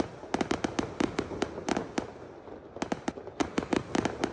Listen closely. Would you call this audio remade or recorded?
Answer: recorded